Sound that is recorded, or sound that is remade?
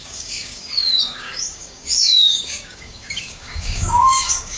remade